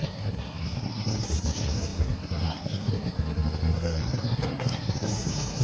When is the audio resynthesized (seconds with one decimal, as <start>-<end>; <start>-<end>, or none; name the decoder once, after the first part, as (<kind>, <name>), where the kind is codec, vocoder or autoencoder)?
0.0-5.6 (codec, SNAC)